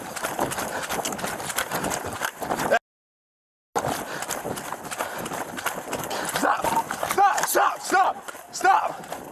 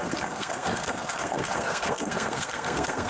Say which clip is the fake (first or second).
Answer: second